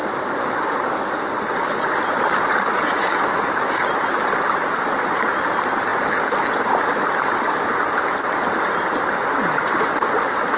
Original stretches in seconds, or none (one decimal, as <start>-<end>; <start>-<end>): 0.0-10.6